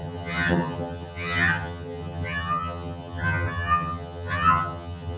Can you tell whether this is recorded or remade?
remade